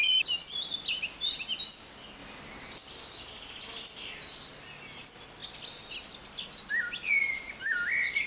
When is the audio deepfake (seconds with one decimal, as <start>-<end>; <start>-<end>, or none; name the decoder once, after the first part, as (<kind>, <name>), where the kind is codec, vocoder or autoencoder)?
none